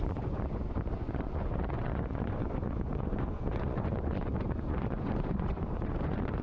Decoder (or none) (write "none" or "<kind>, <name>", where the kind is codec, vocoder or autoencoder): vocoder, Vocos